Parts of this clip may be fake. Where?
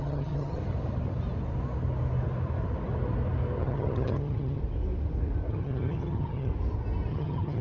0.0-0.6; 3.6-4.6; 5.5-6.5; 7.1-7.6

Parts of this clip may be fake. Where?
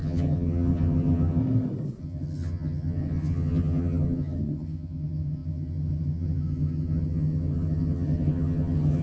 0.0-1.4; 2.0-9.0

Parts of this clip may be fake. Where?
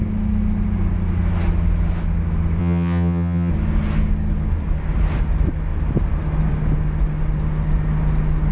2.6-3.5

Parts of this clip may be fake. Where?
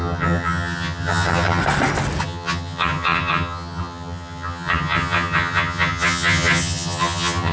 0.0-1.6; 2.2-7.5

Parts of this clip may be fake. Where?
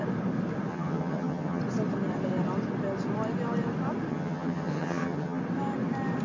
0.7-1.6; 4.1-5.4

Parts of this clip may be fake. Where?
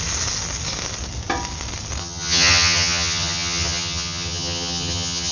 2.0-5.3